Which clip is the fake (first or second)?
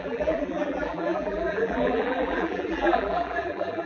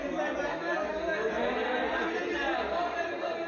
first